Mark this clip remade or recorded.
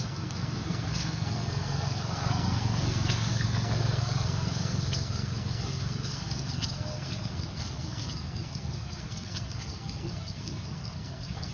remade